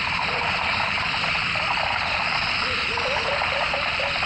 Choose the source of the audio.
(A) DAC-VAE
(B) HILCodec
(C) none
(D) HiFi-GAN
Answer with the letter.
C